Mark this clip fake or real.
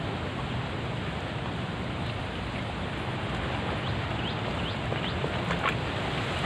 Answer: real